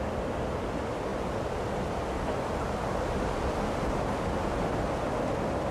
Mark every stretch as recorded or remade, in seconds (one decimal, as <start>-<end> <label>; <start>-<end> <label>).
0.0-5.7 recorded